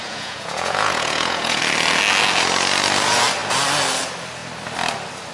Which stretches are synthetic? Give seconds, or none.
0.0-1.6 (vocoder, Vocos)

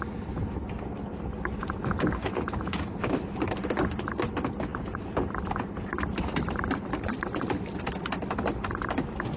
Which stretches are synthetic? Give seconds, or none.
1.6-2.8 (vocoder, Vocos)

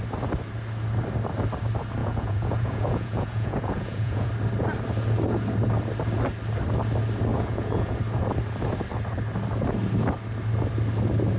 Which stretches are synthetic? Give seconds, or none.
2.0-4.3 (vocoder, Vocos); 7.3-8.0

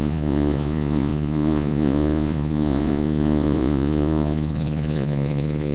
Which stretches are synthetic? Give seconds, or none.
0.0-5.7 (vocoder, Vocos)

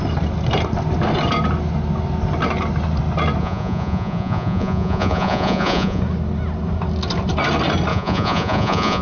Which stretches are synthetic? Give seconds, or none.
3.4-6.0 (vocoder, Vocos); 7.9-9.0

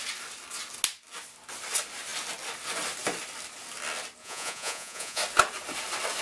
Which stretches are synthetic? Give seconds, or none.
4.2-5.2 (vocoder, Vocos)

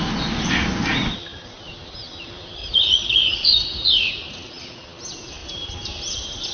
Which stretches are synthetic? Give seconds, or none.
2.6-4.2 (vocoder, Vocos)

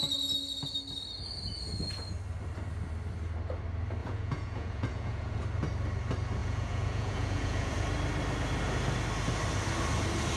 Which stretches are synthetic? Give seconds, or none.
4.0-5.4 (vocoder, Vocos); 6.4-7.7